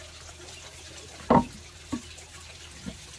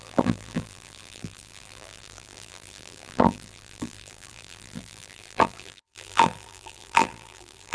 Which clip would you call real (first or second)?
first